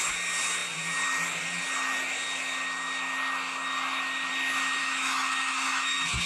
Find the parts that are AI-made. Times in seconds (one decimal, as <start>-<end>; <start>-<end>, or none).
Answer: 4.8-6.2